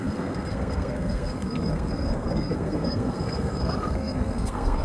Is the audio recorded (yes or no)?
no